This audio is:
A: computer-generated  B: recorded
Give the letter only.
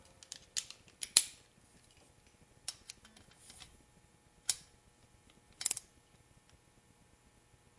B